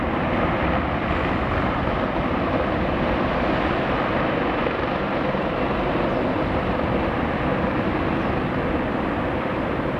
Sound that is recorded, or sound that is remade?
recorded